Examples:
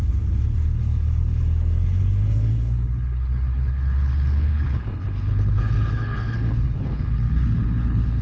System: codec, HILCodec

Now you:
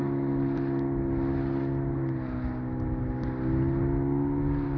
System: none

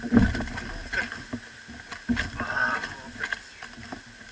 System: none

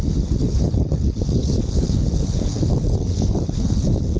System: codec, HILCodec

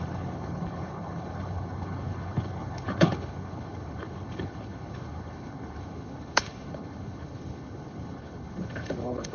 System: codec, HILCodec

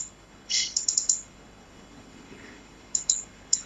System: codec, HILCodec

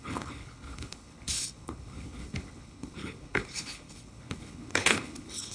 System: codec, HILCodec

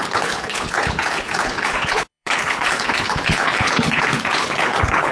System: codec, HILCodec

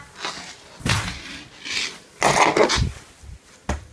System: none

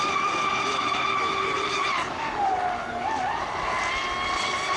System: none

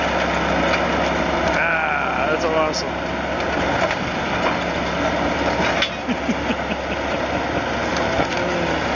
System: none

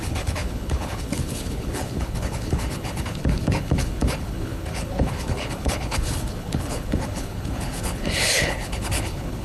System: codec, HILCodec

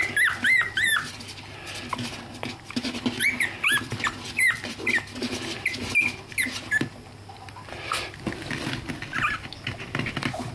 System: none